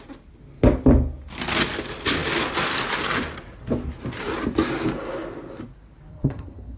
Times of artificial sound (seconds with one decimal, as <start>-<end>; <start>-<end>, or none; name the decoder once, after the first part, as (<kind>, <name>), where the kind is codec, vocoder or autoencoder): 6.1-6.8 (vocoder, HiFi-GAN)